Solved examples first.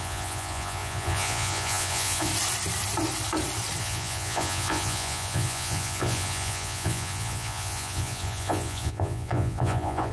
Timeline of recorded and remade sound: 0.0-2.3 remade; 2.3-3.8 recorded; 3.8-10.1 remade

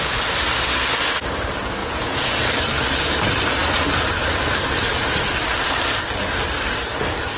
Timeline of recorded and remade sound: 0.0-1.8 recorded; 1.8-2.3 remade; 2.3-7.4 recorded

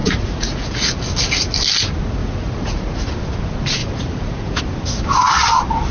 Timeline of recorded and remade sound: 0.0-0.9 remade; 0.9-2.2 recorded; 2.2-3.1 remade; 3.1-3.8 recorded; 3.8-4.6 remade; 4.6-5.9 recorded

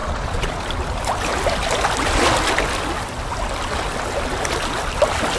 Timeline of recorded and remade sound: 0.0-0.6 remade; 0.6-5.4 recorded

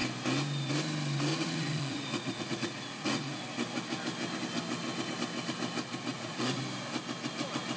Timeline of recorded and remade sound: 0.0-1.3 recorded; 1.3-3.4 remade; 3.4-6.1 recorded; 6.1-6.6 remade; 6.6-7.8 recorded

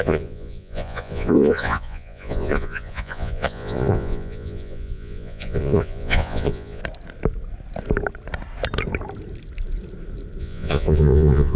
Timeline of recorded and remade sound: 0.0-6.8 remade; 6.8-10.4 recorded; 10.4-11.6 remade

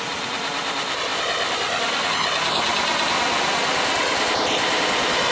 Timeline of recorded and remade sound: 0.0-5.3 recorded

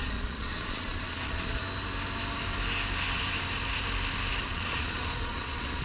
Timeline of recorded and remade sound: 0.0-1.6 remade; 1.6-4.5 recorded; 4.5-5.8 remade